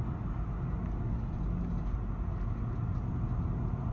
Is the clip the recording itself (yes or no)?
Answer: yes